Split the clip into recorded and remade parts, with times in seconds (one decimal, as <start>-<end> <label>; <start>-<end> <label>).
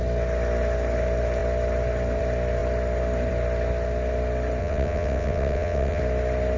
0.0-4.6 recorded; 4.6-6.0 remade; 6.0-6.6 recorded